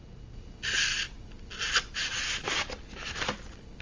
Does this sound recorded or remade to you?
recorded